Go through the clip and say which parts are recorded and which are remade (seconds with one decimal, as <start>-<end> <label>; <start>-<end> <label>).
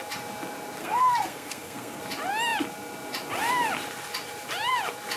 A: 0.0-0.8 recorded; 0.8-2.0 remade; 2.0-5.2 recorded